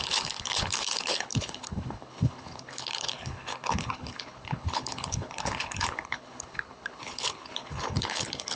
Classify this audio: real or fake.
fake